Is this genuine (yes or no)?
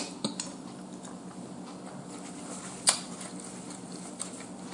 yes